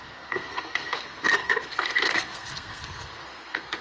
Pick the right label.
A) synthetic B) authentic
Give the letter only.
A